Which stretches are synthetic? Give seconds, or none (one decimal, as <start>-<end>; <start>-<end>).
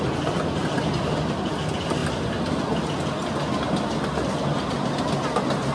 none